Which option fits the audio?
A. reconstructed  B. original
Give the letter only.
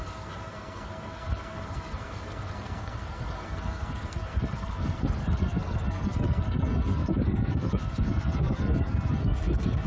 A